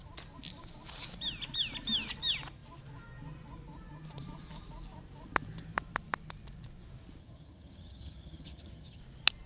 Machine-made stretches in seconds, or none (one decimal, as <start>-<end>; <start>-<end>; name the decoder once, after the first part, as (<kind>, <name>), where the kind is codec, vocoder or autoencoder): 7.2-9.0 (vocoder, HiFi-GAN)